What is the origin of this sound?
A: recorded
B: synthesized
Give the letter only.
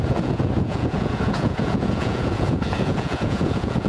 B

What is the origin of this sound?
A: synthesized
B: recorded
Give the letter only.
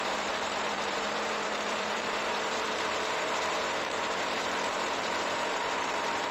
A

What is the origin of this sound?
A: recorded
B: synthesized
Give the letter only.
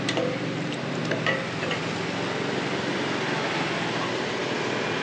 A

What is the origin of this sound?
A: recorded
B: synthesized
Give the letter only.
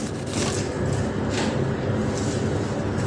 A